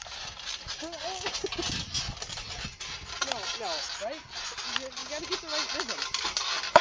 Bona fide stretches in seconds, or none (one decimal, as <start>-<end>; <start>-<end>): 0.0-6.8